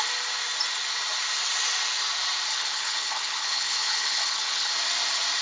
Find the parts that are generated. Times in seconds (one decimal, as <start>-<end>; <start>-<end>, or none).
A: 2.5-4.7